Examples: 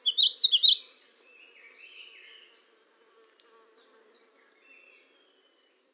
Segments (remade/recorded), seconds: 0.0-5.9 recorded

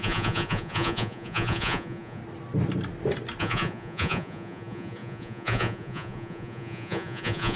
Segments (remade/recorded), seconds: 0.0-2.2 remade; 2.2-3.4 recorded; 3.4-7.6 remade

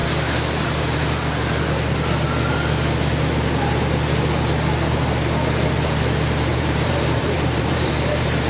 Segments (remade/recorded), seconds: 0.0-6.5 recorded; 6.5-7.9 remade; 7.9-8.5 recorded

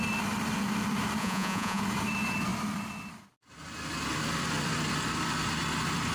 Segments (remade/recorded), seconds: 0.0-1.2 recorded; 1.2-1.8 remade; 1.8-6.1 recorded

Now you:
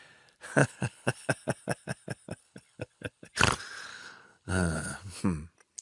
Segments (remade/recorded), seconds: 0.0-0.6 recorded; 0.6-1.3 remade; 1.3-2.4 recorded; 2.4-3.3 remade; 3.3-3.9 recorded; 3.9-5.2 remade; 5.2-5.8 recorded

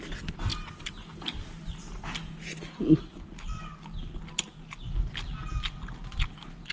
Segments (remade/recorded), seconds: 0.0-6.7 recorded

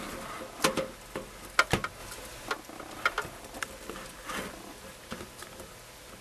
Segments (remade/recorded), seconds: 0.0-6.2 recorded

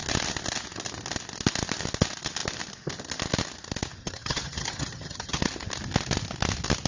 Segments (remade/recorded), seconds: 0.0-4.0 recorded; 4.0-5.4 remade; 5.4-6.9 recorded